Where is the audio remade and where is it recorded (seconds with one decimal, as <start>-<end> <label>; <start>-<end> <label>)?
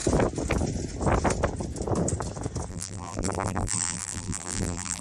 0.0-2.7 recorded; 2.7-5.0 remade